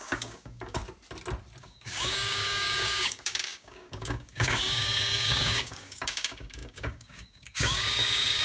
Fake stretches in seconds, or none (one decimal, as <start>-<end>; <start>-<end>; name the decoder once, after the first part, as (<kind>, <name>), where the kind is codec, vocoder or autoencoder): 0.0-0.8 (codec, DAC); 1.6-8.4